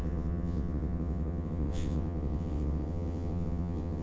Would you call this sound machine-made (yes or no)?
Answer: yes